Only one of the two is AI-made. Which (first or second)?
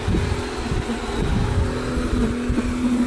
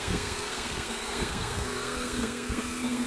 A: second